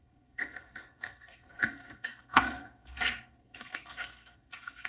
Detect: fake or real fake